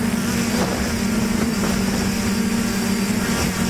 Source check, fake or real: real